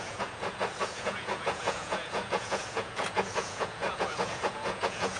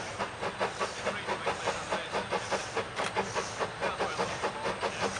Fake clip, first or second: first